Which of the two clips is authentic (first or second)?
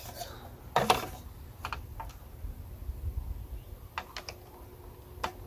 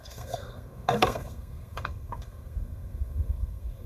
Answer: first